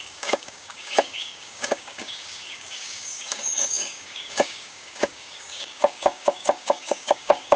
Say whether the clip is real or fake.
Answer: fake